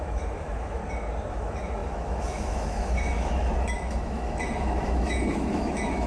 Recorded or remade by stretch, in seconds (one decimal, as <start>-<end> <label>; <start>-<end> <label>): 0.0-0.8 remade; 0.8-1.3 recorded; 1.3-6.1 remade